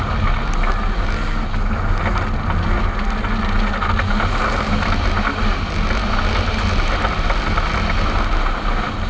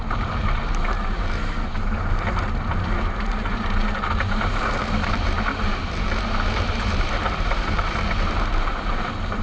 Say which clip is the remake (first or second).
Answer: second